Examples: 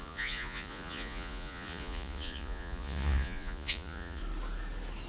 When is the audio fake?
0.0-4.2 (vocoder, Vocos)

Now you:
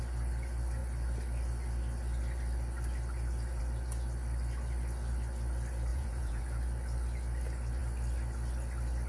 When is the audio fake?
5.9-6.4 (vocoder, Vocos)

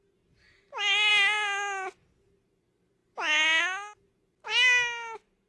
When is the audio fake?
none

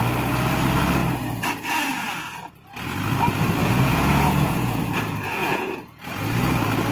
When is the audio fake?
3.6-4.8 (vocoder, Vocos); 5.4-6.2